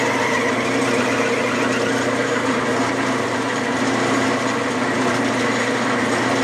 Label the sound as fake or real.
fake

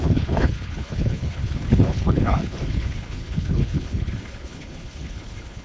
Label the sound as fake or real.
fake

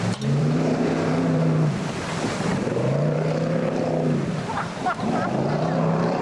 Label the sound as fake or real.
fake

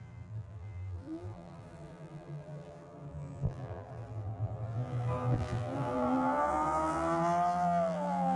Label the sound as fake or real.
fake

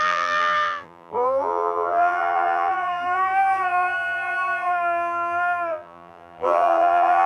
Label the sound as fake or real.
fake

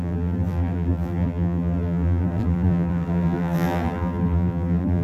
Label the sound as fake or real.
fake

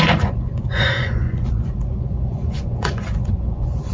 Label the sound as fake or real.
fake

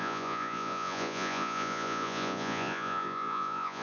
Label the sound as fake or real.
fake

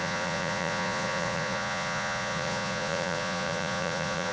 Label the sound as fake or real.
fake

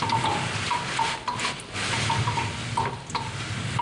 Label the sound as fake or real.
real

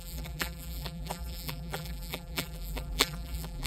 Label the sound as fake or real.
fake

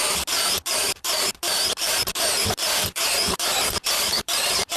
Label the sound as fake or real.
fake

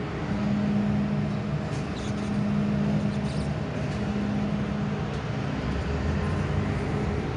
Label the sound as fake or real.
real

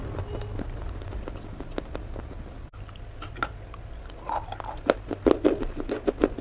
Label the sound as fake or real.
real